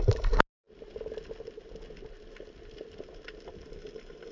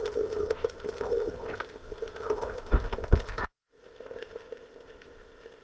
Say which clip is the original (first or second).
first